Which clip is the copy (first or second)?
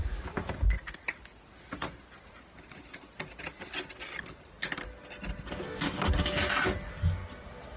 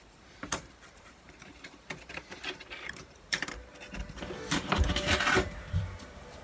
second